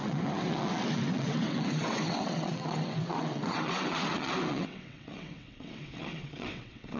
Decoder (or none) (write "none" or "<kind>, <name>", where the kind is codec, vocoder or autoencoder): vocoder, WaveNeXt